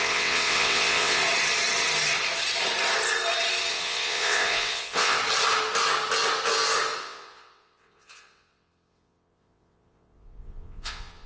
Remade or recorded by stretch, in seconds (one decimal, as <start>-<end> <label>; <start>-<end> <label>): 0.0-1.2 remade; 1.2-3.7 recorded; 3.7-5.2 remade; 5.2-7.0 recorded; 7.0-11.3 remade